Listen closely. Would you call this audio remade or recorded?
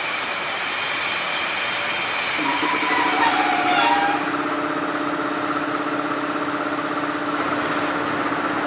recorded